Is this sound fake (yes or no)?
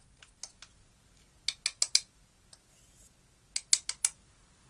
no